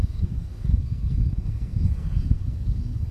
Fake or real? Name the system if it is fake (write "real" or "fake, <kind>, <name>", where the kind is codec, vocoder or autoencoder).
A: fake, codec, SNAC